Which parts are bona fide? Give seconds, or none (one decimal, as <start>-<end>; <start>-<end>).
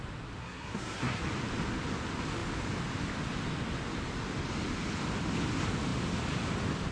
0.0-0.4; 1.2-6.9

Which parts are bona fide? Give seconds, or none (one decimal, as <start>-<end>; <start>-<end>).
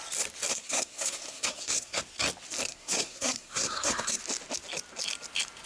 0.0-0.5; 2.0-2.7; 4.2-5.7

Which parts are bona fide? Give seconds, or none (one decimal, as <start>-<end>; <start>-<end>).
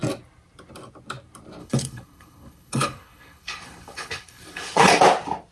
0.0-1.6; 4.9-5.5